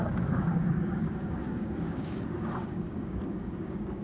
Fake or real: fake